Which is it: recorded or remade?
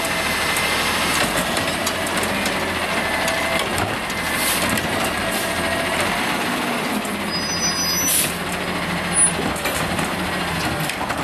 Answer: recorded